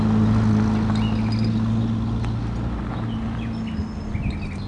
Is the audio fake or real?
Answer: real